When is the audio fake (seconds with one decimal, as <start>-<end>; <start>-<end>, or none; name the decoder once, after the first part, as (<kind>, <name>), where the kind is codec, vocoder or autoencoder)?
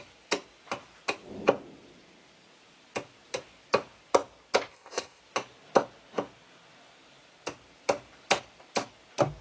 4.7-5.2 (codec, ZipCodec)